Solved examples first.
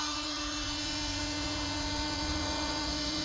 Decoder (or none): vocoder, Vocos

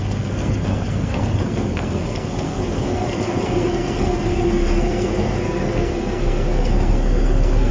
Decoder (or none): codec, SNAC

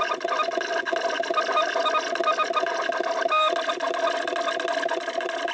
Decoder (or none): none